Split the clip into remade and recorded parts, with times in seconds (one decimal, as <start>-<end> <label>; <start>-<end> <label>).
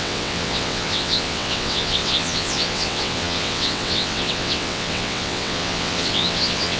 0.0-6.8 remade